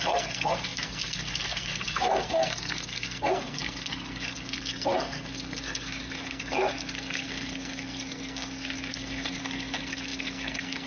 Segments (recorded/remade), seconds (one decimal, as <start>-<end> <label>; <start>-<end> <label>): 0.0-10.9 remade